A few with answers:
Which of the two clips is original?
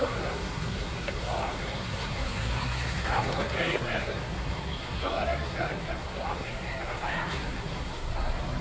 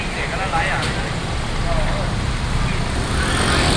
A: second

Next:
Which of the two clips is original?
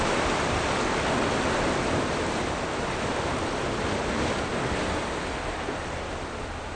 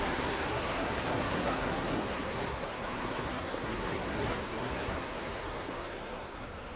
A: first